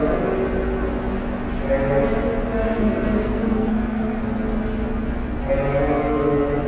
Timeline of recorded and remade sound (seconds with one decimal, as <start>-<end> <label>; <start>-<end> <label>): 0.0-2.6 recorded; 2.6-4.2 remade; 4.2-6.7 recorded